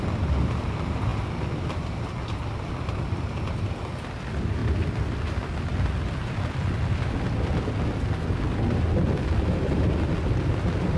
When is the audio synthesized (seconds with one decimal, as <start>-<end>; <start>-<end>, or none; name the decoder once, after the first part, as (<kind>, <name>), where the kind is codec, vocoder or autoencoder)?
none